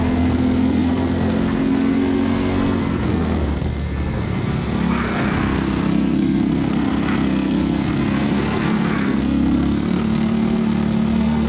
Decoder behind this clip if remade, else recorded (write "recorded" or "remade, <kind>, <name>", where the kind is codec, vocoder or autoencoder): remade, codec, SNAC